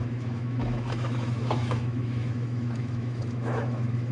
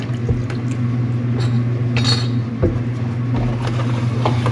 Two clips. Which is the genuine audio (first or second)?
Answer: second